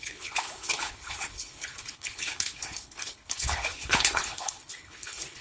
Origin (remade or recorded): remade